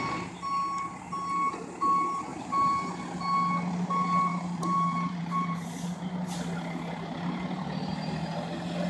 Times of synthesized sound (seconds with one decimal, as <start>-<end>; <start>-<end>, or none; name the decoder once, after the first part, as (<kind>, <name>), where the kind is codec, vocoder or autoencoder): 2.3-2.9 (vocoder, BigVGAN v2); 4.3-6.0